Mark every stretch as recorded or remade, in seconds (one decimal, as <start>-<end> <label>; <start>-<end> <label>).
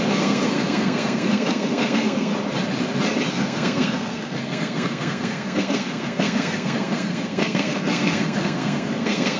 0.0-2.3 remade; 2.3-3.3 recorded; 3.3-9.4 remade